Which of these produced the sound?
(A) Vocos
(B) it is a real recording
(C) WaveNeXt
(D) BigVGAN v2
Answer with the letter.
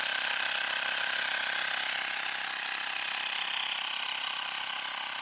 B